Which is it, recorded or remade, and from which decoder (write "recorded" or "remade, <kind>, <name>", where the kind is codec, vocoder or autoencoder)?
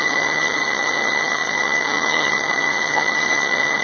remade, vocoder, HiFi-GAN